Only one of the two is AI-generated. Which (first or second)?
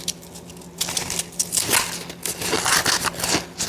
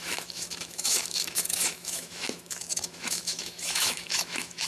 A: second